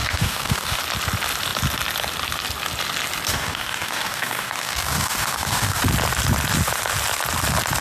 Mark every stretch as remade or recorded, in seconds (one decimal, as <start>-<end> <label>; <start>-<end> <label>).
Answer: 0.0-0.8 remade; 0.8-3.3 recorded; 3.3-5.8 remade; 5.8-7.8 recorded